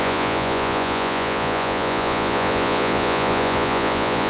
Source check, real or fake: fake